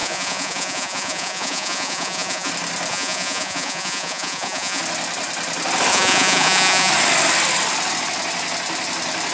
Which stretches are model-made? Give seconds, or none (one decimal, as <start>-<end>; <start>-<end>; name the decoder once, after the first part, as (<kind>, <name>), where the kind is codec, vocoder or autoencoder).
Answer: 0.0-2.5 (vocoder, Vocos); 2.9-4.8; 5.9-6.9